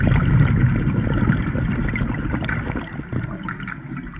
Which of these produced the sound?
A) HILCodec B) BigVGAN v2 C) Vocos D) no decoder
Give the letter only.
D